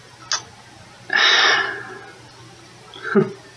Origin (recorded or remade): recorded